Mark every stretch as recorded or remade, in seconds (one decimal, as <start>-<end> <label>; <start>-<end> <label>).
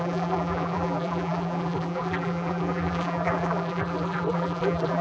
0.0-5.0 remade